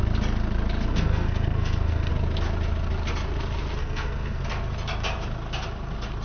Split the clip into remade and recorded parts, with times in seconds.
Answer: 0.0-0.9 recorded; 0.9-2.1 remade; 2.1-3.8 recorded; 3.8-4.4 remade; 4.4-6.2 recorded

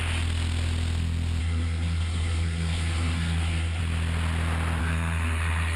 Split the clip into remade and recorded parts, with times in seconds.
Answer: 0.0-1.4 recorded; 1.4-3.8 remade; 3.8-4.8 recorded; 4.8-5.8 remade

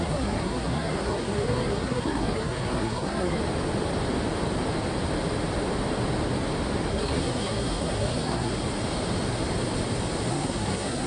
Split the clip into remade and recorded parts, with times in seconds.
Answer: 0.0-3.4 remade; 3.4-6.9 recorded; 6.9-8.5 remade; 8.5-10.3 recorded; 10.3-11.1 remade